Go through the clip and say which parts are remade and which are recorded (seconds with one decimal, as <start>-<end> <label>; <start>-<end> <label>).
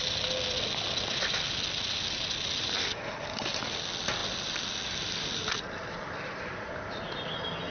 0.0-4.2 recorded; 4.2-7.0 remade; 7.0-7.7 recorded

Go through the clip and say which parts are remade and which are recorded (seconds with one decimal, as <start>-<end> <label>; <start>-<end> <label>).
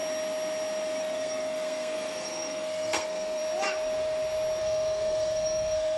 0.0-1.0 recorded; 1.0-3.4 remade; 3.4-4.6 recorded; 4.6-6.0 remade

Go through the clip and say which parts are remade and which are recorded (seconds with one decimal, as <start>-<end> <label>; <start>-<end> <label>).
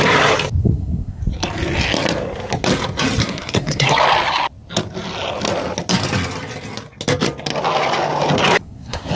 0.0-0.6 recorded; 0.6-1.2 remade; 1.2-3.2 recorded; 3.2-3.9 remade; 3.9-8.6 recorded; 8.6-9.1 remade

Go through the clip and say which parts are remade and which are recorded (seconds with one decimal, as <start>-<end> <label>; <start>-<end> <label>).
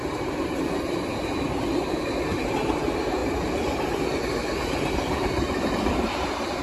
0.0-6.6 remade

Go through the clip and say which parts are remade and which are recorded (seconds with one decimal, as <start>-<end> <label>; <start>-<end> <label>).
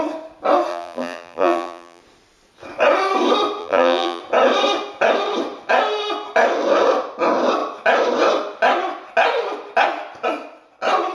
0.0-0.7 recorded; 0.7-2.0 remade; 2.0-3.6 recorded; 3.6-4.2 remade; 4.2-11.1 recorded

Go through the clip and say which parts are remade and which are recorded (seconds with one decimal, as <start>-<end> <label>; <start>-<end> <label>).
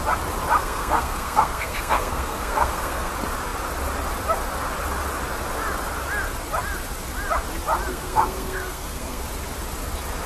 0.0-0.6 recorded; 0.6-3.1 remade; 3.1-7.9 recorded; 7.9-9.2 remade; 9.2-10.3 recorded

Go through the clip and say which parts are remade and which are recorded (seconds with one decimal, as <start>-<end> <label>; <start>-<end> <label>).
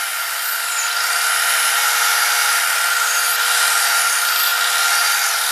0.0-5.5 recorded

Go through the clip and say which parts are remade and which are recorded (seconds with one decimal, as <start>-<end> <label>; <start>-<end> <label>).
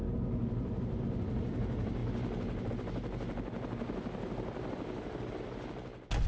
0.0-6.3 recorded